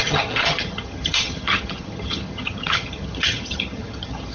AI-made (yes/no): yes